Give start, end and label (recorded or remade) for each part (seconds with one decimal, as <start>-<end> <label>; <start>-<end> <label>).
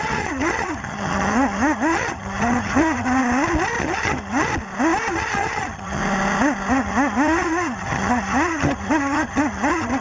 0.0-3.2 remade; 3.2-3.8 recorded; 3.8-4.5 remade; 4.5-5.1 recorded; 5.1-6.0 remade; 6.0-6.7 recorded; 6.7-10.0 remade